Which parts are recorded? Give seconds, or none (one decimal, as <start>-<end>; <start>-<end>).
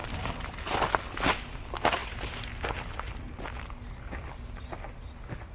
0.0-5.5